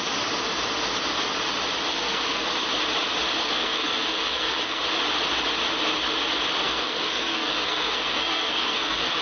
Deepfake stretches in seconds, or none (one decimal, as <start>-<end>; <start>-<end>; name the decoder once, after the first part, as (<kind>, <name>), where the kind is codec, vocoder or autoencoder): 1.9-2.4 (codec, SNAC); 3.4-4.8; 6.6-9.2